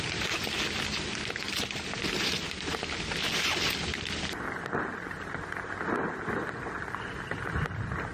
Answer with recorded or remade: recorded